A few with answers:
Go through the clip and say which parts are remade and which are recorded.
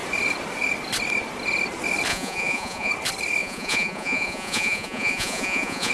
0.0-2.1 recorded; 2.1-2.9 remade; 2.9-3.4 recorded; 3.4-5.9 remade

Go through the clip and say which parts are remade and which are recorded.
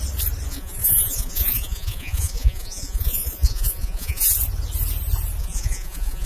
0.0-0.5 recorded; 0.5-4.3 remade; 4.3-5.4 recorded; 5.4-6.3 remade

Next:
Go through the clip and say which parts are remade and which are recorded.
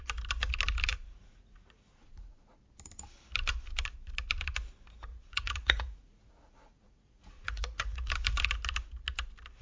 0.0-0.9 recorded; 0.9-2.6 remade; 2.6-5.1 recorded; 5.1-8.1 remade; 8.1-9.6 recorded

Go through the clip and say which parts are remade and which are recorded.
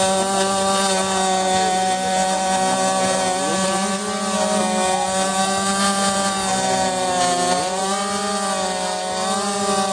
0.0-9.9 recorded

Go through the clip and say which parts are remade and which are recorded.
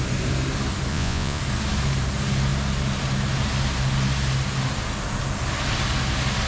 0.0-0.9 recorded; 0.9-1.4 remade; 1.4-6.5 recorded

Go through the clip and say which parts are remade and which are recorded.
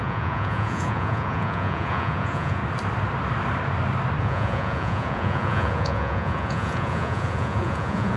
0.0-2.6 remade; 2.6-4.2 recorded; 4.2-8.2 remade